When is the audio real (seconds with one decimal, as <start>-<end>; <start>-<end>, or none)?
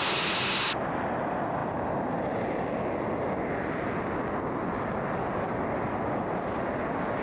0.0-7.2